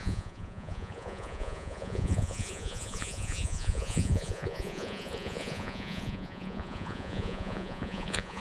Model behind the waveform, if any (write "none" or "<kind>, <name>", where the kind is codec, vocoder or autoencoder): vocoder, Vocos